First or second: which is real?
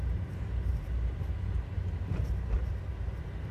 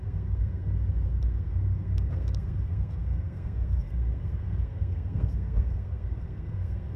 first